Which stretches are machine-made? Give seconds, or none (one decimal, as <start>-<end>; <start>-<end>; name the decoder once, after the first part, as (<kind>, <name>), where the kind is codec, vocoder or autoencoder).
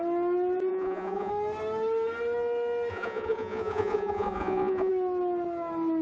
0.7-1.3 (vocoder, Vocos); 2.9-4.9